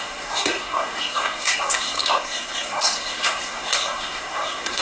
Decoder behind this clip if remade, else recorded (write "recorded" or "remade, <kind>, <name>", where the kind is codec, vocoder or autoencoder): remade, codec, SNAC